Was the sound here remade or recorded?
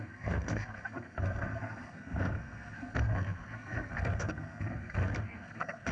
remade